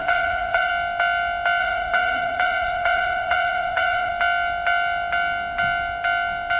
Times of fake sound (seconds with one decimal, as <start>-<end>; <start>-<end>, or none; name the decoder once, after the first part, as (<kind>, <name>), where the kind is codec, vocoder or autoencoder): 0.0-0.7 (vocoder, Vocos); 1.6-4.1